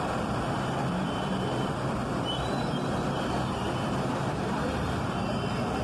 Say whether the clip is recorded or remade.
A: remade